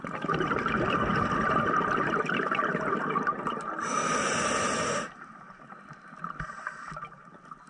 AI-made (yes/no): no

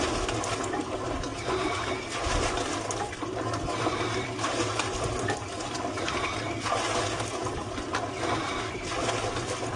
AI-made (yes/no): no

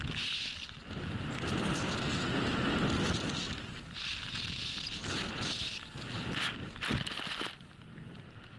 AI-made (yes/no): no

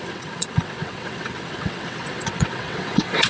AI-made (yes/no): yes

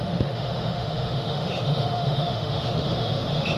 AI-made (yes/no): yes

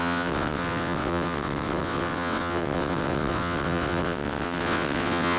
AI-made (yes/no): yes